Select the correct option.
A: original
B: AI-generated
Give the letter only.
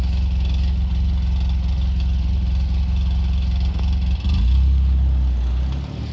A